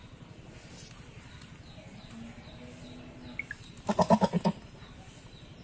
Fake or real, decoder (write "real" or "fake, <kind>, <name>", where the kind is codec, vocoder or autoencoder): real